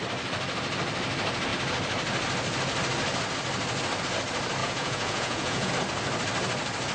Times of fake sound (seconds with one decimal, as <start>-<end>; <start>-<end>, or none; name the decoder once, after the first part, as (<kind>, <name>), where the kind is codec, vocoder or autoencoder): 4.6-5.7 (vocoder, Vocos)